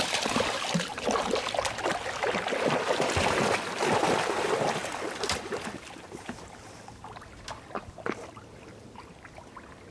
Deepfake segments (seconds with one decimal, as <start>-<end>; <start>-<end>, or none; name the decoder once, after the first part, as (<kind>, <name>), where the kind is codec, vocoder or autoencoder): none